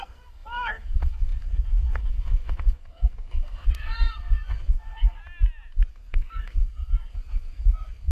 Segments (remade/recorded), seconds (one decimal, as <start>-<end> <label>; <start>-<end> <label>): 0.0-5.2 remade; 5.2-5.9 recorded; 5.9-8.1 remade